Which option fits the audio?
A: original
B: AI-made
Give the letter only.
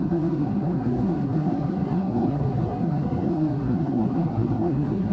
B